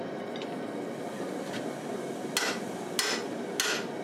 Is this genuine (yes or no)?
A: yes